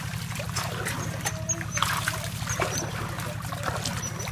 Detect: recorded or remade recorded